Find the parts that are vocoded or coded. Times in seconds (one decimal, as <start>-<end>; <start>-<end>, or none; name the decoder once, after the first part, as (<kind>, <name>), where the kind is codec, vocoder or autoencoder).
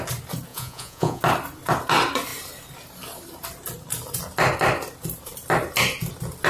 0.5-1.2 (vocoder, Vocos)